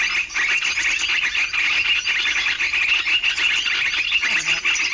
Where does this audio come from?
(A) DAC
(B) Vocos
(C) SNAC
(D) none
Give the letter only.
D